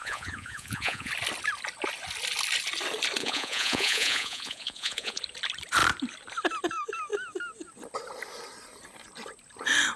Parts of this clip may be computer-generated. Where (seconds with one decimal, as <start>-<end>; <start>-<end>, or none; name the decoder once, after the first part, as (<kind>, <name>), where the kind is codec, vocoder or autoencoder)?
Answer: 0.0-1.1 (vocoder, Vocos); 3.2-5.2